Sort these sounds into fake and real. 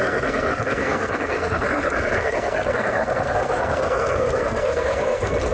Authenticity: fake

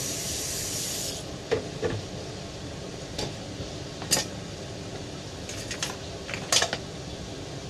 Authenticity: real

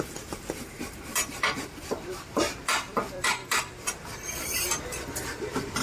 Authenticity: fake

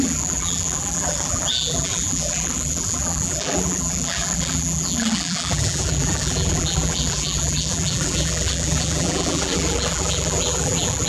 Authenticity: fake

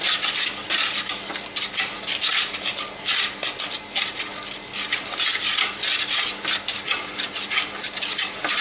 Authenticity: real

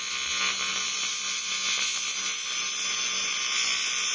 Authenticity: real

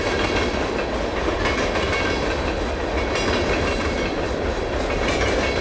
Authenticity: real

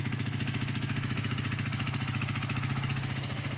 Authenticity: fake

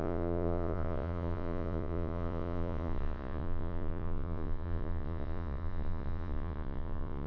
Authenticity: fake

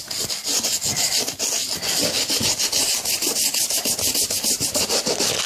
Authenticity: real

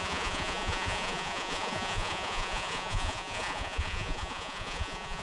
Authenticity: fake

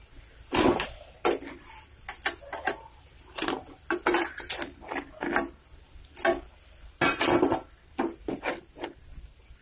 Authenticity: real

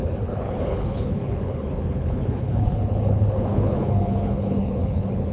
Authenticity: fake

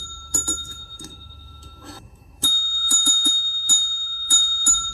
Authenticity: fake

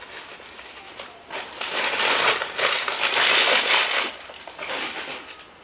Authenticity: real